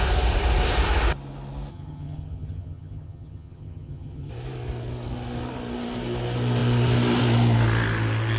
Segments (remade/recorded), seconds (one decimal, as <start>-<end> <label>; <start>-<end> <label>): 0.0-1.7 recorded; 1.7-4.3 remade; 4.3-8.4 recorded